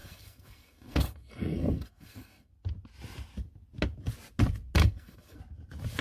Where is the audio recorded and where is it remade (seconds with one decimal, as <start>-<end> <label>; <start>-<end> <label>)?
0.0-2.5 remade; 2.5-4.8 recorded; 4.8-5.4 remade; 5.4-6.0 recorded